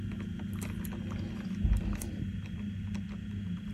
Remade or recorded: recorded